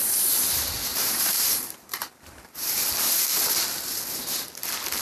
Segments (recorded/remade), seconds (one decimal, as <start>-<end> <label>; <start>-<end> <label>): 0.0-0.9 recorded; 0.9-3.5 remade; 3.5-5.0 recorded